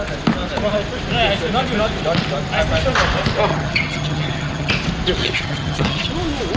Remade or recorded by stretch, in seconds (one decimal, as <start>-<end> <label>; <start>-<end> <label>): 0.0-3.5 recorded; 3.5-4.7 remade; 4.7-5.2 recorded; 5.2-6.1 remade; 6.1-6.6 recorded